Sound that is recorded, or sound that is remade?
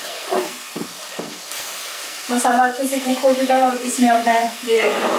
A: remade